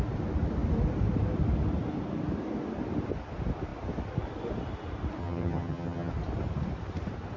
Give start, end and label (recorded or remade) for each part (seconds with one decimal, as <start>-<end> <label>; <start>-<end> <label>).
0.0-5.2 recorded; 5.2-6.1 remade; 6.1-7.4 recorded